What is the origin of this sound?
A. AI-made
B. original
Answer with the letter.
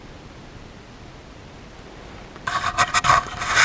B